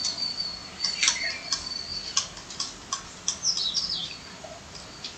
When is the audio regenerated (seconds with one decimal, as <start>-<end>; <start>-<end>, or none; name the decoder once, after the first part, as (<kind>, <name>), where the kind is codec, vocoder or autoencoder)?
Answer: none